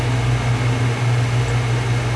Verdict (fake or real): real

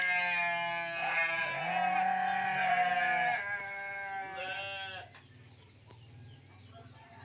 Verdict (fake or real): real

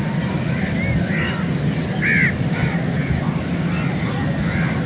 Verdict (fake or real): real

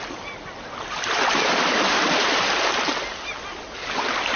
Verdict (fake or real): real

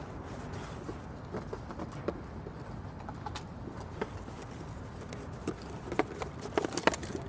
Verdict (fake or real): real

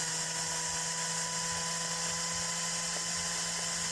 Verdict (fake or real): real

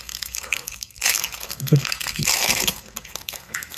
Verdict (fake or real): fake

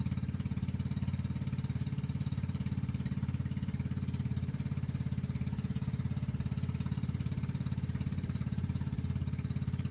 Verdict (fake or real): fake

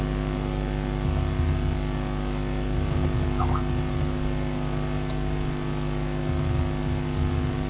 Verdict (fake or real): real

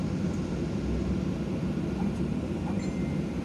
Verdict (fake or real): real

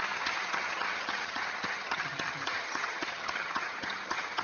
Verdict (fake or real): fake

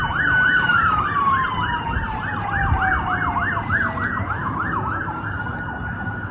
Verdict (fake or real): real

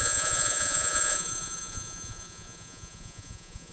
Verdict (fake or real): fake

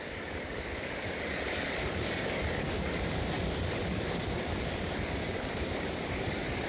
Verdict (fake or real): fake